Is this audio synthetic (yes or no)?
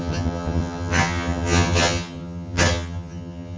yes